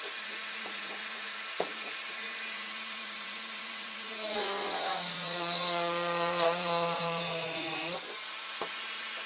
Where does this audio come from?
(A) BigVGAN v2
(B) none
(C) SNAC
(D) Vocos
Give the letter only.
D